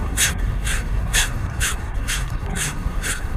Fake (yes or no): yes